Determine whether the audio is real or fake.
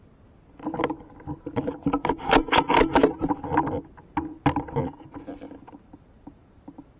real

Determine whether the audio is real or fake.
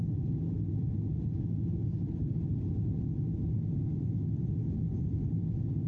real